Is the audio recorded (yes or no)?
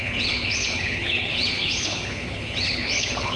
no